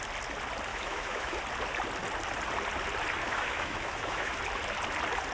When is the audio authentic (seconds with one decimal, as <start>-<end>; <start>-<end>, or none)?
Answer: 0.0-0.7; 1.4-3.2; 4.4-5.3